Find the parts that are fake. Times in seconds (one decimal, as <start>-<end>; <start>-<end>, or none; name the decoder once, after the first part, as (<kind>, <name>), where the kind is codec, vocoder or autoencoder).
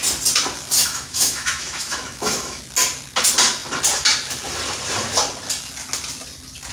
0.8-2.6 (autoencoder, DAC-VAE)